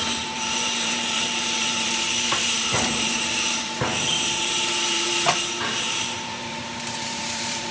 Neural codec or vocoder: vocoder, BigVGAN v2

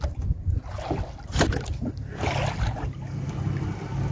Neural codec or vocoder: none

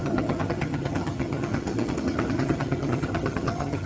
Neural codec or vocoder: vocoder, HiFi-GAN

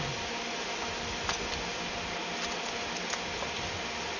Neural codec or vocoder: none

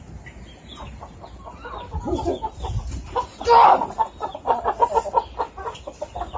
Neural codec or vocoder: none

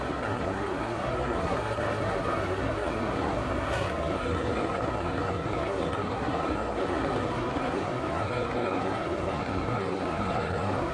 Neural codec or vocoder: codec, SNAC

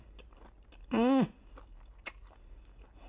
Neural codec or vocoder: none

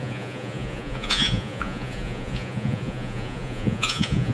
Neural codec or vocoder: vocoder, Vocos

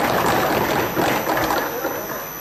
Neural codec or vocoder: none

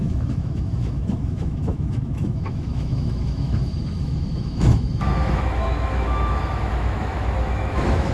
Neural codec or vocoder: autoencoder, DAC-VAE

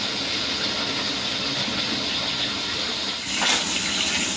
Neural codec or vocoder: none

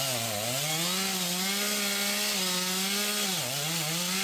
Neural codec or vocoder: none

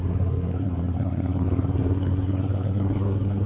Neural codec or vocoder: codec, SNAC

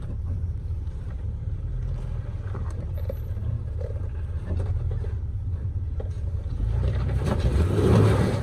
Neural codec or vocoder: vocoder, BigVGAN v2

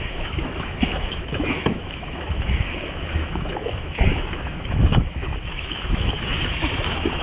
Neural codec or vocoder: autoencoder, DAC-VAE